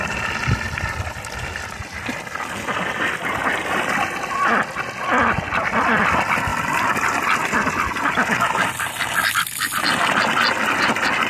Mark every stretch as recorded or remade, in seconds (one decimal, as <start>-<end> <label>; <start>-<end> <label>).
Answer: 0.0-11.3 recorded